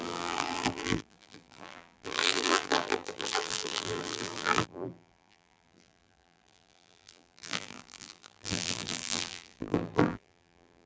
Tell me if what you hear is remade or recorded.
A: remade